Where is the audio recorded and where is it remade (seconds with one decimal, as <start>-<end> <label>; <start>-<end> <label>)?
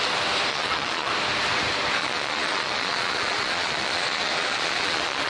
0.0-0.5 recorded; 0.5-1.1 remade; 1.1-2.0 recorded; 2.0-5.3 remade